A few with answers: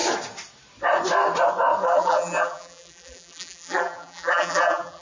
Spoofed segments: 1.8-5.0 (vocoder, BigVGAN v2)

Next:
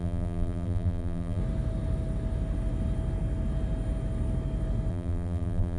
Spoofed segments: 0.0-1.4 (vocoder, BigVGAN v2); 4.9-5.8

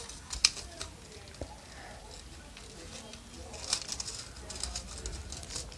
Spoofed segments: 0.4-0.9 (vocoder, BigVGAN v2)

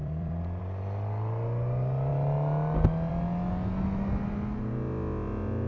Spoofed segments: 0.0-0.6 (vocoder, BigVGAN v2)

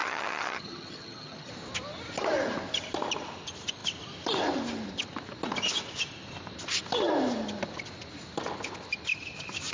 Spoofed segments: 0.0-1.5 (vocoder, HiFi-GAN)

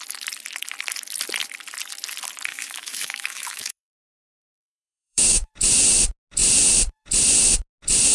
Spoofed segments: 2.5-5.5 (autoencoder, DAC-VAE)

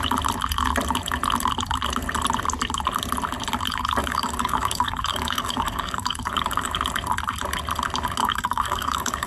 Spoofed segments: 4.0-6.7 (codec, DAC); 8.2-9.3